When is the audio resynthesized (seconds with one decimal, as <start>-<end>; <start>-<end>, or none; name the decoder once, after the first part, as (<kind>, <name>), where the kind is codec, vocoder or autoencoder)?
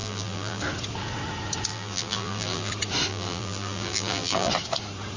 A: 0.0-0.6 (vocoder, BigVGAN v2); 1.7-2.7; 3.1-4.5